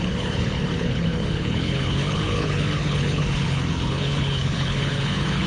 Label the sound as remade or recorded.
remade